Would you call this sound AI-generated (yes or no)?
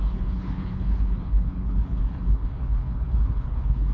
yes